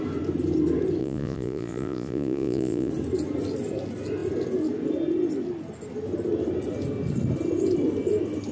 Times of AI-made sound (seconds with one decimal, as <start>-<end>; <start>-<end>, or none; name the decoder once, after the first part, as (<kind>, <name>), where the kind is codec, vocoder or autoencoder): 1.0-2.9 (vocoder, Vocos)